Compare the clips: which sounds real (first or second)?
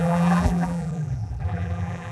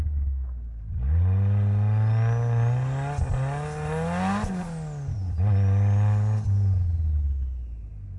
second